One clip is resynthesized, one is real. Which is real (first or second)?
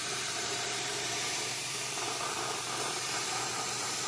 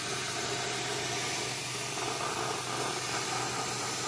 second